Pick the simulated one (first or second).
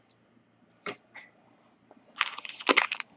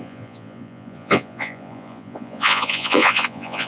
second